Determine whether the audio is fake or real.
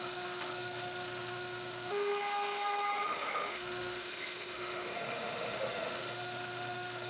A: fake